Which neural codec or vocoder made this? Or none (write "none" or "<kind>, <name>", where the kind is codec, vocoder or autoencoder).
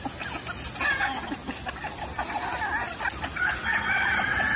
none